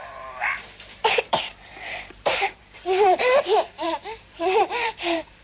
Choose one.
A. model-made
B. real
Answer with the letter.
A